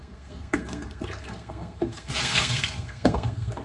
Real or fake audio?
fake